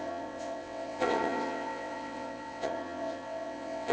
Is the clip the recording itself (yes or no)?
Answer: no